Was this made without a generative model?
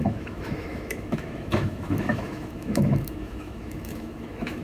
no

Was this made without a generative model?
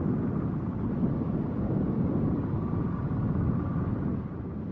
yes